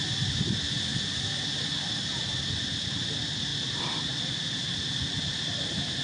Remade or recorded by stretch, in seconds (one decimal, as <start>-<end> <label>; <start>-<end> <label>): 0.0-6.0 recorded